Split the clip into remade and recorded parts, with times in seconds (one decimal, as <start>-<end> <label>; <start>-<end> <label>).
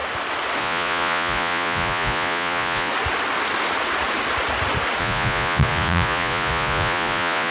0.0-0.6 recorded; 0.6-2.9 remade; 2.9-5.0 recorded; 5.0-7.5 remade